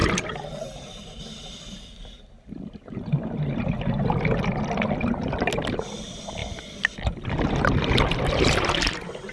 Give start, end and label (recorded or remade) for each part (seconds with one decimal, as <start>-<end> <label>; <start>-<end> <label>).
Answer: 0.0-1.2 remade; 1.2-9.3 recorded